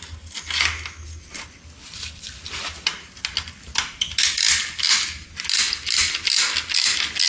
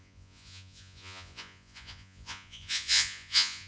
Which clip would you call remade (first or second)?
second